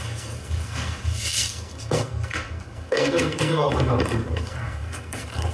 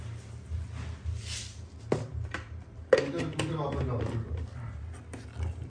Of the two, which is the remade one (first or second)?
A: first